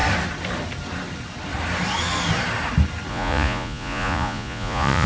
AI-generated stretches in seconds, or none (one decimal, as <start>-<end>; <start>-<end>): 3.1-5.1